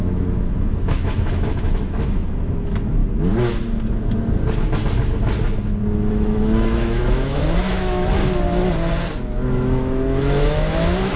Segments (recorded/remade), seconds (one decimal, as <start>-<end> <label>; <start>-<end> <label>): 0.0-3.0 remade; 3.0-6.1 recorded; 6.1-8.2 remade; 8.2-9.2 recorded; 9.2-11.2 remade